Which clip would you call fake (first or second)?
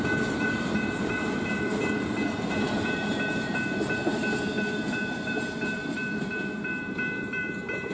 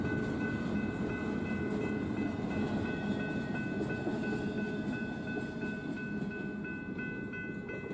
first